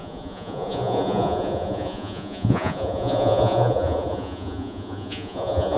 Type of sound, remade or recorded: remade